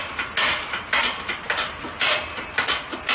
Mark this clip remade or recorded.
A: recorded